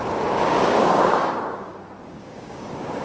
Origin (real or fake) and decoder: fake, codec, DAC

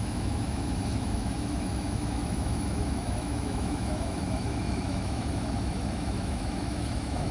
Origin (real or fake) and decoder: fake, autoencoder, DAC-VAE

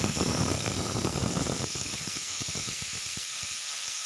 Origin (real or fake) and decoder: fake, codec, SNAC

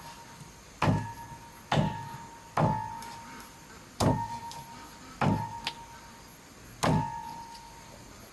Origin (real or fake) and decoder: real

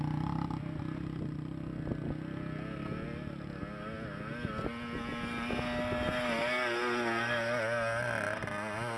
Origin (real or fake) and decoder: real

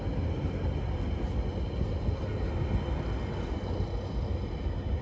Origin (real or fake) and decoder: real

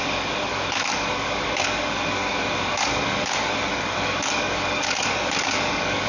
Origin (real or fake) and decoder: fake, codec, DAC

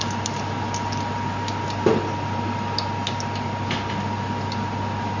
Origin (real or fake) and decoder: real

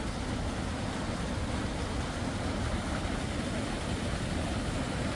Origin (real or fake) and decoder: real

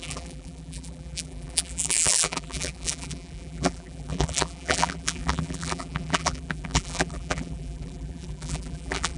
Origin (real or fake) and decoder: fake, vocoder, BigVGAN v2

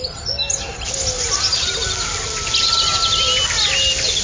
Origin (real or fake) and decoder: real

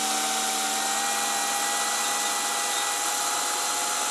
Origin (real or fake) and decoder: real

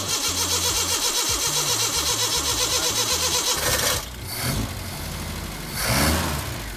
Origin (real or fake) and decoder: real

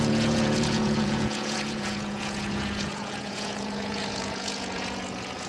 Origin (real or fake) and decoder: fake, vocoder, Vocos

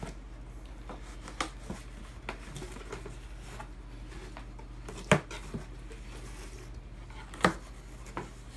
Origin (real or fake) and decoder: real